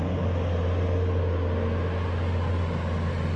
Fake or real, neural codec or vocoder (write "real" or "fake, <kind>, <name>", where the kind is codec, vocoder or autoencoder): real